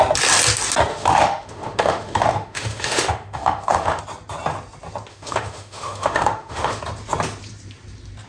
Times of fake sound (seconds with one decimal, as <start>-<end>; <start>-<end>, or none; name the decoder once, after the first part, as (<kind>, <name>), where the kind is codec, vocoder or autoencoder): 0.9-4.0 (autoencoder, DAC-VAE); 5.1-6.8